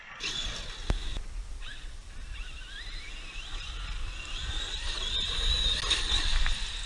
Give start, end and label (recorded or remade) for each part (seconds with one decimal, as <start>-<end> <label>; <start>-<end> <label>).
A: 0.0-6.9 recorded